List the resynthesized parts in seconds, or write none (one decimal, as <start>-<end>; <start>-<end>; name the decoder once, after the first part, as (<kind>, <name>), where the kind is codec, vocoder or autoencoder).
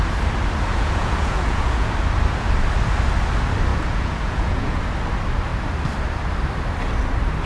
0.7-1.9 (vocoder, Vocos); 3.7-4.8